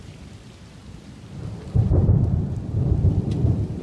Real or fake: real